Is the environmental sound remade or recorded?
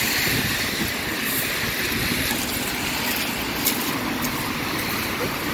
recorded